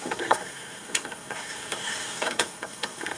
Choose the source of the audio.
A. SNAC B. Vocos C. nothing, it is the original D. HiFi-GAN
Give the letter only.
A